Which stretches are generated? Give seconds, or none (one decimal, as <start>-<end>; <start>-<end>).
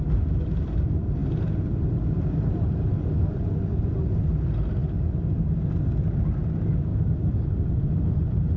none